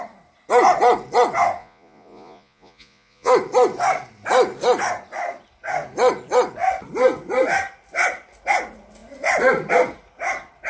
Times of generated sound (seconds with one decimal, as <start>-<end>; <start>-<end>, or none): 1.6-3.3